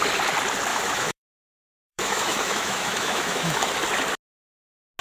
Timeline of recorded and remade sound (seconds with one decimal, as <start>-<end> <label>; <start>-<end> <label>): 0.0-0.7 recorded; 0.7-3.7 remade; 3.7-5.0 recorded